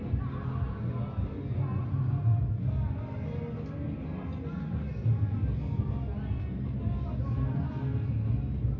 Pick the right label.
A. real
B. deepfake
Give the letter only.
A